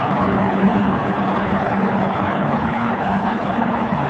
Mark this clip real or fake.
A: fake